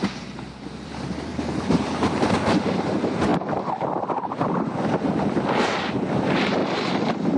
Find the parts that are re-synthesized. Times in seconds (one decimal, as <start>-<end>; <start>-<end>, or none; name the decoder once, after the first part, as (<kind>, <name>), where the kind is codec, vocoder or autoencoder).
0.0-3.3 (vocoder, BigVGAN v2); 6.1-7.4